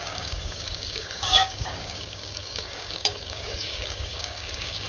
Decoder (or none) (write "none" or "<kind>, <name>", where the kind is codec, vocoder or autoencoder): codec, DAC